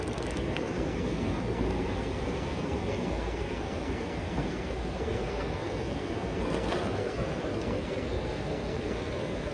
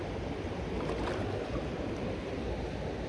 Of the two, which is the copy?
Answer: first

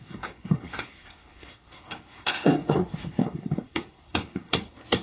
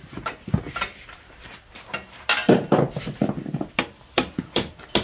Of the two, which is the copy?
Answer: first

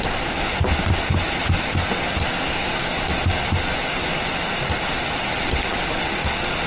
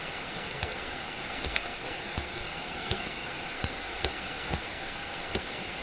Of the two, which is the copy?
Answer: second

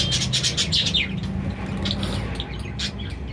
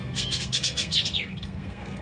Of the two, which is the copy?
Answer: second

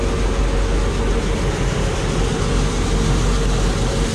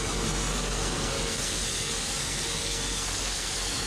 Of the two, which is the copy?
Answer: second